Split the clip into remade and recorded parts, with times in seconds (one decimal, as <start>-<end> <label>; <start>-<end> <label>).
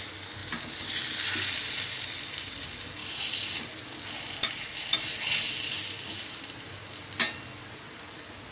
0.0-8.5 recorded